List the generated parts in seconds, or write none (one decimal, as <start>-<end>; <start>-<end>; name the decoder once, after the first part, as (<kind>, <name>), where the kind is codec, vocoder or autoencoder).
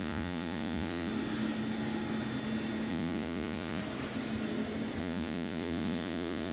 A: 0.0-1.1 (vocoder, Vocos); 2.9-3.8; 5.0-6.5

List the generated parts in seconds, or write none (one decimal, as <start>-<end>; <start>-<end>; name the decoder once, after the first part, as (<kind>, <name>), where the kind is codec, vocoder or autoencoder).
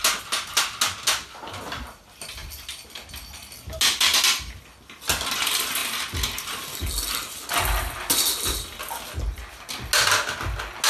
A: 4.1-4.6 (vocoder, BigVGAN v2)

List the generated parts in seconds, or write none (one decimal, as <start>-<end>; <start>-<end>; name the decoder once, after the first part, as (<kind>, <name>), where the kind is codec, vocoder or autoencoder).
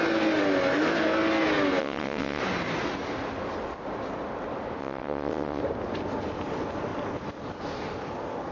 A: 1.8-2.4 (vocoder, WaveNeXt); 4.8-5.6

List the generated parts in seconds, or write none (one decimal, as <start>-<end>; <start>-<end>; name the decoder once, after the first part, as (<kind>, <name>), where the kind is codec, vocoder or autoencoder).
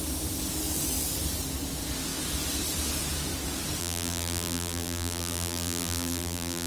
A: 3.8-6.7 (vocoder, BigVGAN v2)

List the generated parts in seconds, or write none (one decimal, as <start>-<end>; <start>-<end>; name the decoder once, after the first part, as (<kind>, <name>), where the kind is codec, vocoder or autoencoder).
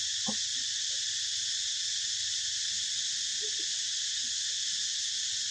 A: 0.5-1.6 (vocoder, BigVGAN v2)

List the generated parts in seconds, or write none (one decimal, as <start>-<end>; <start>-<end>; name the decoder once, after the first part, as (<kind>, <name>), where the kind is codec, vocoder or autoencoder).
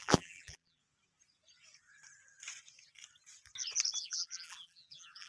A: 0.0-0.8 (vocoder, BigVGAN v2); 4.0-5.3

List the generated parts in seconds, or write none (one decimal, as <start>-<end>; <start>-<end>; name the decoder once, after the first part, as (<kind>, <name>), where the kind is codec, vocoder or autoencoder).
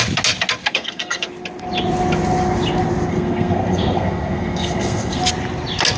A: 0.6-1.3 (codec, SNAC); 3.1-5.2